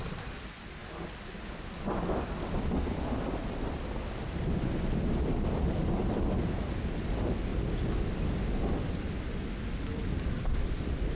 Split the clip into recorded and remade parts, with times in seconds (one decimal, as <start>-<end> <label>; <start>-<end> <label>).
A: 0.0-11.1 recorded